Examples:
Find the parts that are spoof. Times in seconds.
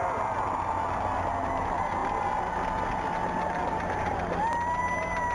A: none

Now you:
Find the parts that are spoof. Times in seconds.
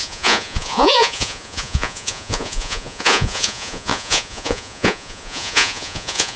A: 0.0-6.4 (vocoder, Vocos)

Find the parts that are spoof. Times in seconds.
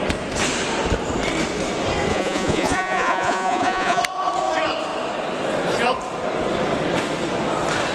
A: 2.1-4.0 (vocoder, Vocos)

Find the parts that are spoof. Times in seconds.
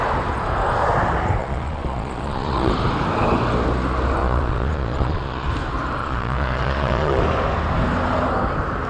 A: 1.4-2.7 (vocoder, Vocos); 4.2-5.5; 6.0-7.2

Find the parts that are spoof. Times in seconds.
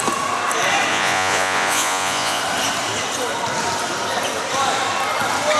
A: 0.9-2.4 (vocoder, Vocos)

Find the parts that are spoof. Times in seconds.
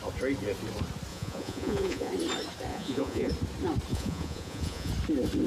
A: 1.1-2.1 (vocoder, Vocos); 2.7-3.3; 3.9-4.9